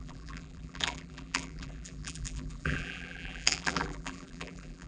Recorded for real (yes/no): no